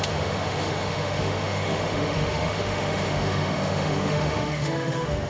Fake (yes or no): yes